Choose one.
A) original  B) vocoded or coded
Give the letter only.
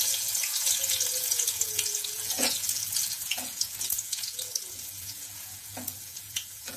B